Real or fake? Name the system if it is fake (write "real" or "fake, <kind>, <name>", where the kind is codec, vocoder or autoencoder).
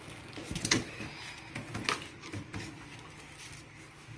real